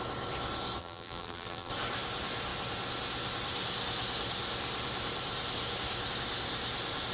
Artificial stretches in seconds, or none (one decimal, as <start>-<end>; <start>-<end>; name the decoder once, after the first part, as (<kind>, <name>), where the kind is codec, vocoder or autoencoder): 0.8-1.7 (vocoder, BigVGAN v2)